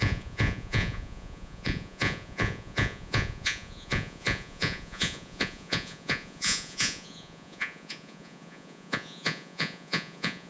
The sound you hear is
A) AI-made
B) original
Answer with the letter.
A